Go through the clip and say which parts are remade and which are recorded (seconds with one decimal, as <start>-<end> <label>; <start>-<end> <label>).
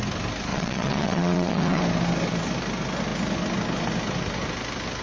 0.0-0.5 recorded; 0.5-1.8 remade; 1.8-5.0 recorded